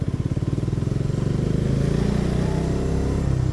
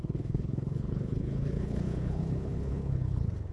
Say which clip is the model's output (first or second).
second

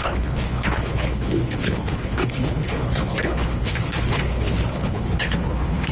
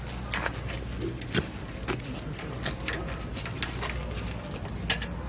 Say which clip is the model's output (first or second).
first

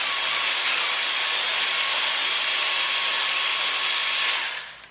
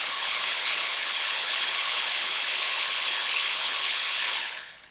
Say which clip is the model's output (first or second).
second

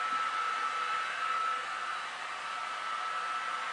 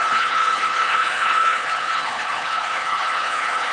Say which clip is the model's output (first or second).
second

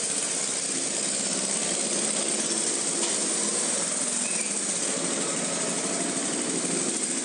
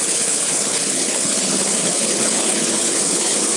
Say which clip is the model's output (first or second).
second